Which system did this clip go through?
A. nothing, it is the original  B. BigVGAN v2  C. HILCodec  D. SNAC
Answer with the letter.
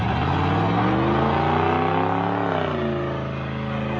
A